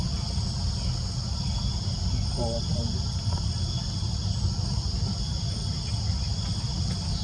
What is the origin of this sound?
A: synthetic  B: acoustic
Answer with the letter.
B